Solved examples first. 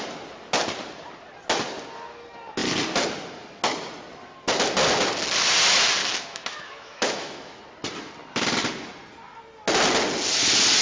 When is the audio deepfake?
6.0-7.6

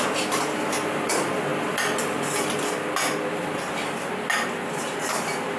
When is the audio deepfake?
none

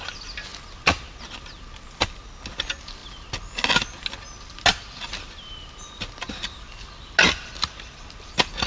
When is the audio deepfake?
none

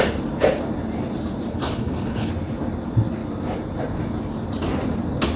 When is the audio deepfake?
1.5-2.3